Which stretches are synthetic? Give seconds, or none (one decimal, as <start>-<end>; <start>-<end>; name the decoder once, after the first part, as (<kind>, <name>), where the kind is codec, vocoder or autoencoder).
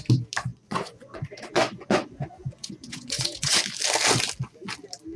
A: 0.5-3.6 (vocoder, Vocos)